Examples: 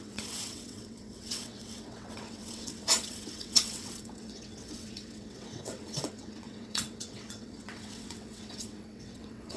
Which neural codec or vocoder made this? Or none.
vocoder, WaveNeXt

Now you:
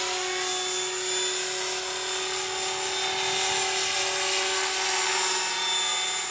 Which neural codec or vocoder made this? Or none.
none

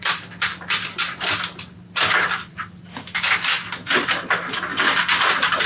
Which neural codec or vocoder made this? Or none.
none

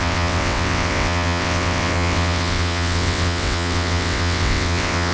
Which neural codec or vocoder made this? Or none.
vocoder, WaveNeXt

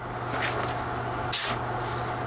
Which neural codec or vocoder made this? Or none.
none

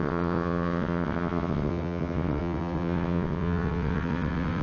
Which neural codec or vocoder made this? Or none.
vocoder, WaveNeXt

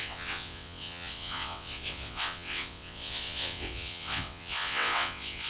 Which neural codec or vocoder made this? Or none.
vocoder, WaveNeXt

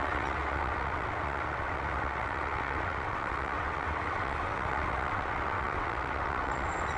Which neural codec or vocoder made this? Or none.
vocoder, WaveNeXt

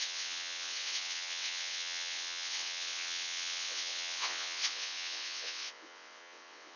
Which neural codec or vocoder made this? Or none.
vocoder, WaveNeXt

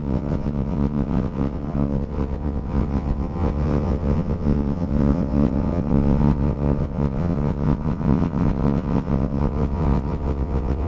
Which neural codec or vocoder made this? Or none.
vocoder, WaveNeXt